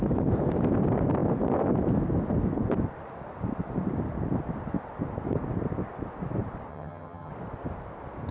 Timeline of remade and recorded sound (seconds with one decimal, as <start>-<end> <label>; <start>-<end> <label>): 0.0-6.7 recorded; 6.7-7.3 remade; 7.3-8.3 recorded